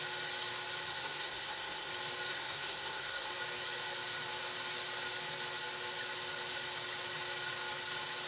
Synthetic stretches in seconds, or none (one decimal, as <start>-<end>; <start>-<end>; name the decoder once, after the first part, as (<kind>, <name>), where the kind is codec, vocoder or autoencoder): 0.9-1.9 (codec, SNAC); 2.3-3.3